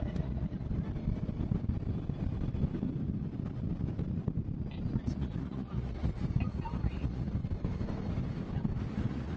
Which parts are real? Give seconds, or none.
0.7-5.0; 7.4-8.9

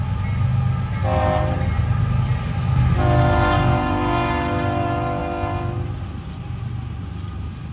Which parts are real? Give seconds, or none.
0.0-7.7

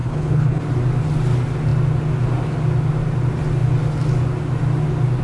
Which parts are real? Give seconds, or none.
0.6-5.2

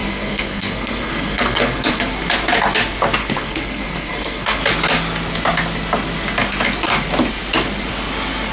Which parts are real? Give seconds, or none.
2.1-3.2; 4.6-8.5